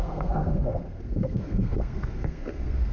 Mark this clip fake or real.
fake